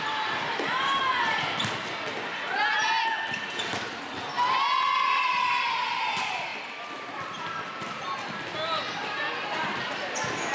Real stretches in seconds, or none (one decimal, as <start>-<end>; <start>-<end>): 0.0-10.5